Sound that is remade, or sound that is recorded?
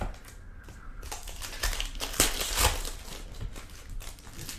recorded